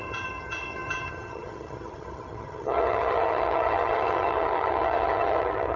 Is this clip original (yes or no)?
no